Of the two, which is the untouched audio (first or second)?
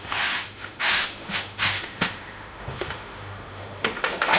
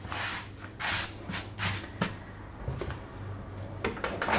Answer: second